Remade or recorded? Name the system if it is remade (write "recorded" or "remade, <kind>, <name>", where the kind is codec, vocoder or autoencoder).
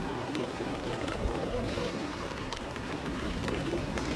remade, codec, SNAC